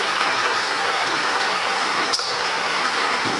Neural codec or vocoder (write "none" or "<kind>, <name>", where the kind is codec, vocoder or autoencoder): codec, SNAC